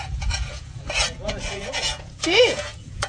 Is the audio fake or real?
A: fake